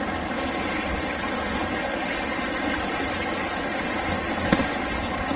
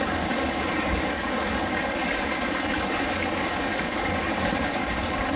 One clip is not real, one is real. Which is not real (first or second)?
second